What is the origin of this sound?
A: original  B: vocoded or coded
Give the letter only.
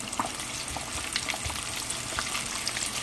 A